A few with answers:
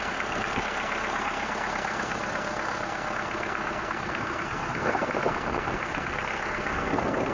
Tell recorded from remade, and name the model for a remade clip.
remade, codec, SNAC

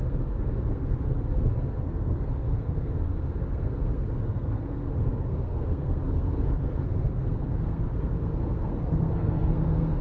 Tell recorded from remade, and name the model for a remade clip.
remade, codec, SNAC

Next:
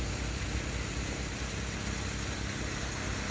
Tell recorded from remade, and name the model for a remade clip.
recorded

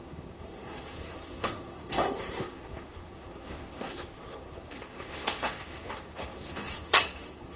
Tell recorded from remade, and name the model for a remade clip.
remade, codec, SNAC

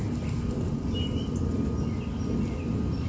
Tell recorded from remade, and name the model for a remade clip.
recorded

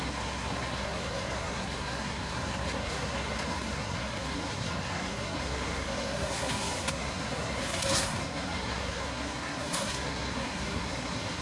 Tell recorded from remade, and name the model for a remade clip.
remade, codec, SNAC